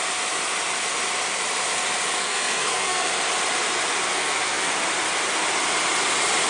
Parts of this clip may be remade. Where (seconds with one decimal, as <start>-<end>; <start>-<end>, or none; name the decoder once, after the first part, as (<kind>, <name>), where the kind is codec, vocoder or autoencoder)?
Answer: 2.2-3.1 (codec, SNAC); 4.1-4.7

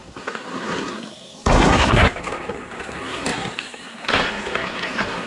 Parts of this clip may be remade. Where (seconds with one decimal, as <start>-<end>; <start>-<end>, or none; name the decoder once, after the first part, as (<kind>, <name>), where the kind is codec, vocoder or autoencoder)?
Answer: 0.0-5.3 (codec, SNAC)

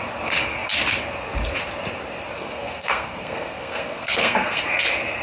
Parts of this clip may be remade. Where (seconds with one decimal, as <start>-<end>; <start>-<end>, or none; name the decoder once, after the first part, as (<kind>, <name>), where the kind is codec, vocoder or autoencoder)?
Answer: 2.4-4.6 (codec, SNAC)

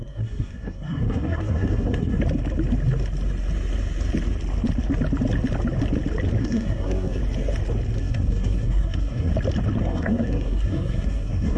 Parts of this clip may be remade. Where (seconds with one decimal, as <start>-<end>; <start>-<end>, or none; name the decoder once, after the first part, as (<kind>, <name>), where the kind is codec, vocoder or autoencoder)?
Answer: 0.0-2.2 (codec, SNAC); 6.4-7.2; 8.0-9.3; 9.8-11.6